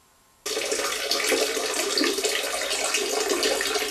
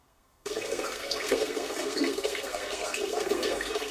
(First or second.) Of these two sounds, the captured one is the first